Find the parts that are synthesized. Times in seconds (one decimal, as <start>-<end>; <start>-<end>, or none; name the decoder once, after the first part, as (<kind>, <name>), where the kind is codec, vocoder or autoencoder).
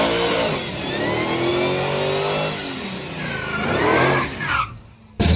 none